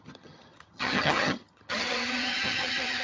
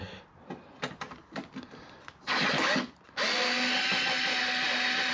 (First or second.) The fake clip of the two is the first